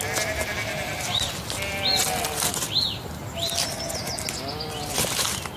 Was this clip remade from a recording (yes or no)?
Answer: no